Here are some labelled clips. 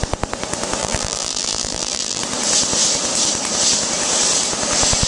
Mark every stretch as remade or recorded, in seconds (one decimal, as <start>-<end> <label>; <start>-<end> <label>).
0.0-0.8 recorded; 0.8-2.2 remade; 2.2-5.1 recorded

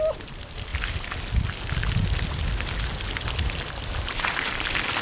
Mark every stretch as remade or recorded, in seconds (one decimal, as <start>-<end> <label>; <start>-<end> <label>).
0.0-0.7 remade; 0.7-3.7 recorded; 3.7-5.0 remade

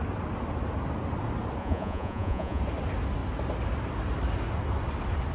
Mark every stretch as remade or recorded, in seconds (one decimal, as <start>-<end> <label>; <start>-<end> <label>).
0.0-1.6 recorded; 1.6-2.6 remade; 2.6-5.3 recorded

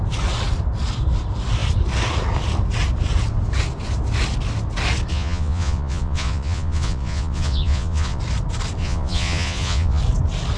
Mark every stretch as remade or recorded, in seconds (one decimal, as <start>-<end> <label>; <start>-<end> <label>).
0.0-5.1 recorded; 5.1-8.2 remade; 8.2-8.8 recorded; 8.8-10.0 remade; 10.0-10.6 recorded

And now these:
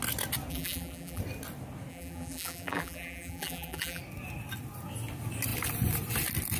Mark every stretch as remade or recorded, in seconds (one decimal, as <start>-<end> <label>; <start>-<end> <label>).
0.0-0.5 recorded; 0.5-1.2 remade; 1.2-1.9 recorded; 1.9-4.0 remade; 4.0-6.6 recorded